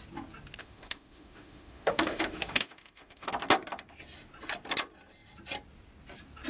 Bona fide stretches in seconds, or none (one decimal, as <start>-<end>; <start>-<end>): 0.0-0.6; 3.3-6.5